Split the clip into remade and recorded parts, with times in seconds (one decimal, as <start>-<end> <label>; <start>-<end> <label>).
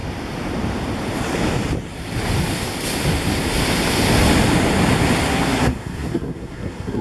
0.0-5.3 recorded; 5.3-7.0 remade